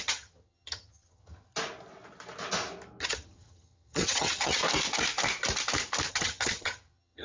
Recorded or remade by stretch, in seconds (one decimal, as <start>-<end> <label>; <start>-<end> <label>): 0.0-1.5 remade; 1.5-3.0 recorded; 3.0-4.6 remade; 4.6-6.1 recorded; 6.1-7.2 remade